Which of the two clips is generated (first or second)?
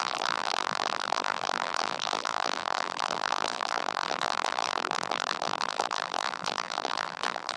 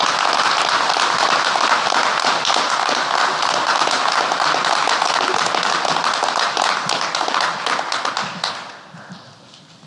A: first